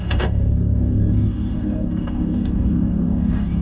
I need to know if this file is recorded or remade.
remade